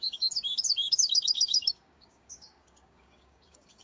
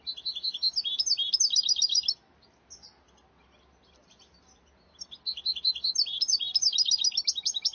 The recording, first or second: second